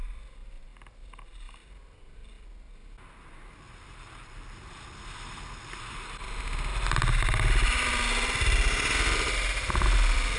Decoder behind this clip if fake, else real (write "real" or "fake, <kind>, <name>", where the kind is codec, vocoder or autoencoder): real